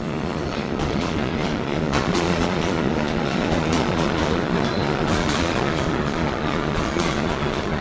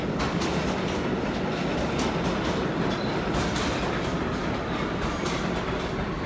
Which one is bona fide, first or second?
second